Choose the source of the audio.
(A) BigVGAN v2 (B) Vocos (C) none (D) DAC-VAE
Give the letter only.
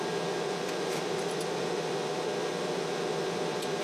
C